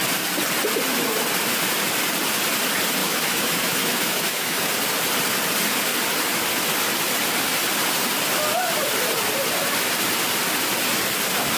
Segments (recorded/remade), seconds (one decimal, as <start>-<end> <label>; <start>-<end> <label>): 0.0-3.0 recorded; 3.0-4.7 remade; 4.7-11.6 recorded